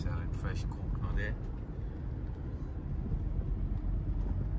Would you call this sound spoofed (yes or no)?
no